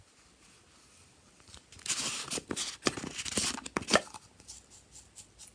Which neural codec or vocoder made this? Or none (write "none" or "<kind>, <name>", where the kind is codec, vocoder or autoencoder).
none